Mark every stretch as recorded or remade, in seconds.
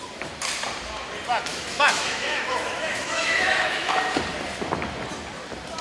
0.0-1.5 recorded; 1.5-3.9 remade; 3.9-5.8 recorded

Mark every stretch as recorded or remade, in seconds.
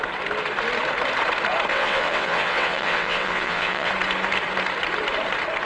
0.0-1.7 recorded; 1.7-3.9 remade; 3.9-5.7 recorded